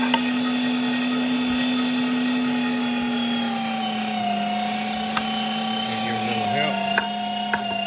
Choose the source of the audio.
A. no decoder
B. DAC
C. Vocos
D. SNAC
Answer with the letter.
A